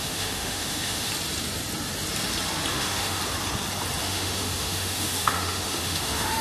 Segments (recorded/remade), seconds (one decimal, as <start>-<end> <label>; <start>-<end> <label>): 0.0-1.1 remade; 1.1-2.7 recorded; 2.7-3.2 remade; 3.2-4.0 recorded; 4.0-6.4 remade